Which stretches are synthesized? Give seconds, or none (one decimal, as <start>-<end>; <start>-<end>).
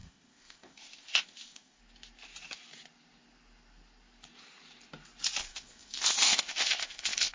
0.0-1.8; 5.4-7.3